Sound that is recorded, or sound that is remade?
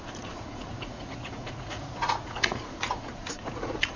remade